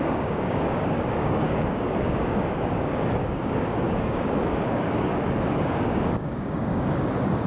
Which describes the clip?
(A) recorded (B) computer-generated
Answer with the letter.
B